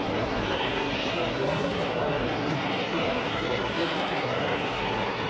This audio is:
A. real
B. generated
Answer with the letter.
B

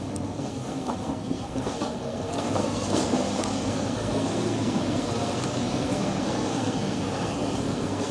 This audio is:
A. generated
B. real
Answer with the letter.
A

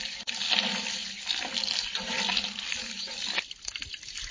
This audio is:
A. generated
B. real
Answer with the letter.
B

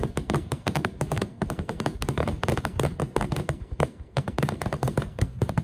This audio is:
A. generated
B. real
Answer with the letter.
A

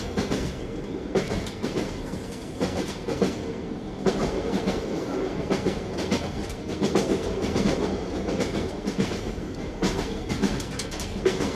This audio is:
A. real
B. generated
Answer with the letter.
B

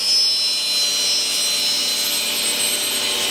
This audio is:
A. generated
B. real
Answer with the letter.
B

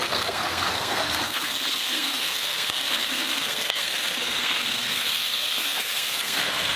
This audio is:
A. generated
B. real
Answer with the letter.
A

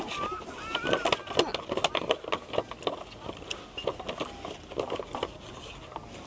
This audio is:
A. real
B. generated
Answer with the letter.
A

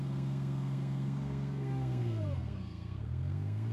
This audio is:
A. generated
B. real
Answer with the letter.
A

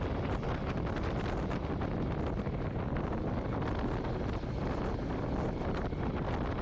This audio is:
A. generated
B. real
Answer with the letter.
B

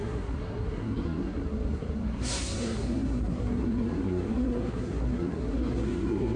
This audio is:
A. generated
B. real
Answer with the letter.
A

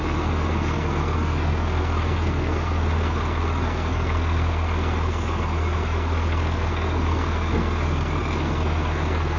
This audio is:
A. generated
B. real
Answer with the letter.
A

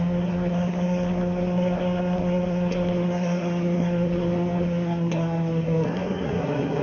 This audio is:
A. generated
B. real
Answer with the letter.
A